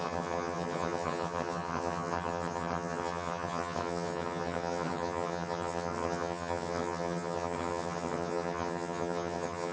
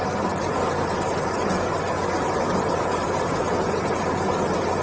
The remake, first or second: first